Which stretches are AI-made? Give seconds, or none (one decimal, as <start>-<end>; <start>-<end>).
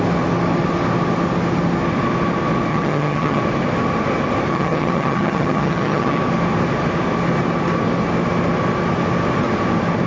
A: 2.7-3.4; 4.5-6.2